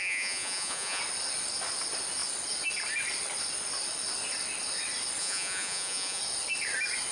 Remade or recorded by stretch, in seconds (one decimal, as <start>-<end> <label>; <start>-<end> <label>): 0.0-1.0 remade; 1.0-5.2 recorded; 5.2-6.2 remade; 6.2-7.1 recorded